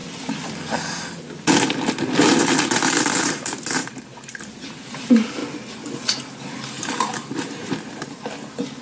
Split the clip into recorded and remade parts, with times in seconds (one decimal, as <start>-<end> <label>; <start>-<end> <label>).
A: 0.0-3.8 recorded; 3.8-4.4 remade; 4.4-8.8 recorded